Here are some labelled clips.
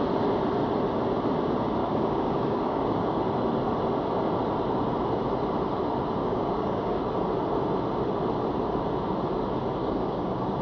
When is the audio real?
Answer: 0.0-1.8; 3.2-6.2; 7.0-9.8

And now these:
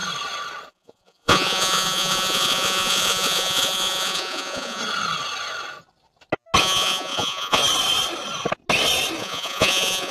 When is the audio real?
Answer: 0.0-0.7; 4.8-6.6; 7.6-9.2

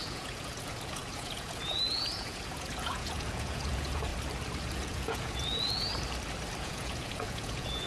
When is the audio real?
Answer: 4.1-4.6; 5.9-6.6

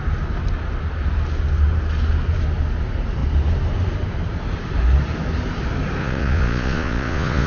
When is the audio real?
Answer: 0.0-6.0

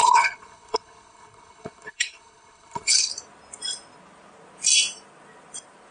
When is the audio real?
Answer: 3.1-5.9